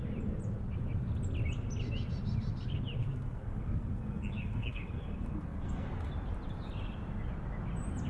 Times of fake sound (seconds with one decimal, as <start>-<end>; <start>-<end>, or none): 3.0-6.1